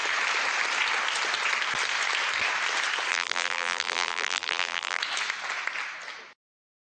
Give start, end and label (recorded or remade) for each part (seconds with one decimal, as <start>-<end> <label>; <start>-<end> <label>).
0.0-3.1 recorded; 3.1-5.0 remade; 5.0-6.9 recorded